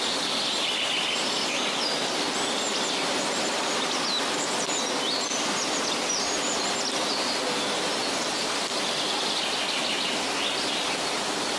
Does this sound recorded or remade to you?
recorded